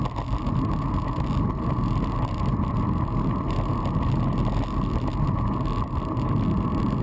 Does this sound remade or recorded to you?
recorded